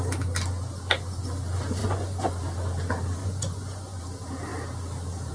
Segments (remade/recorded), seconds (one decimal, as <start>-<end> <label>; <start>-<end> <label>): 0.0-1.8 recorded; 1.8-2.3 remade; 2.3-3.2 recorded; 3.2-4.0 remade; 4.0-5.3 recorded

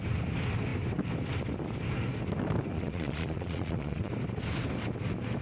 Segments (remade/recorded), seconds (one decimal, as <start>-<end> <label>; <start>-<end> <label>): 0.0-2.7 recorded; 2.7-4.1 remade; 4.1-5.4 recorded

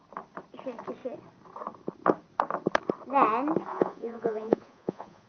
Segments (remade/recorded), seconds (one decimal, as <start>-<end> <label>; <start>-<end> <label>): 0.0-3.7 recorded; 3.7-5.3 remade

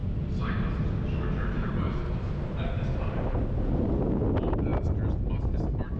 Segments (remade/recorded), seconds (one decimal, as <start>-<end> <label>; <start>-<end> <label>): 0.0-6.0 recorded

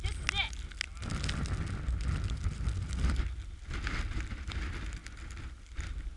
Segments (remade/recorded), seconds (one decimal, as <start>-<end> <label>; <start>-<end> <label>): 0.0-6.2 recorded